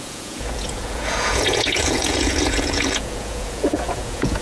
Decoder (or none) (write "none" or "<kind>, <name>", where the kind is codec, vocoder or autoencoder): vocoder, Vocos